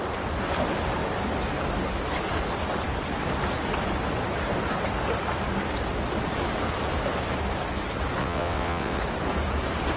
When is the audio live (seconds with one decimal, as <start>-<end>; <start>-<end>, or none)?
0.0-8.2; 9.0-10.0